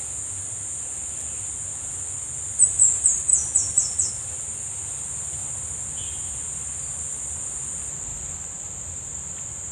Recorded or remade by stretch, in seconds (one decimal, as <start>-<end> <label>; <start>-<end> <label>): 0.0-9.7 recorded